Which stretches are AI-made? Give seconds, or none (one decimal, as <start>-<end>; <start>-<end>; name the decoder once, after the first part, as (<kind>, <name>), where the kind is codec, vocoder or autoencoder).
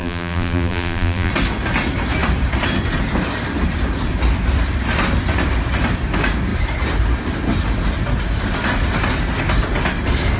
0.0-1.3 (vocoder, BigVGAN v2)